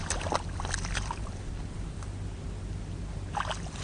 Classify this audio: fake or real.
real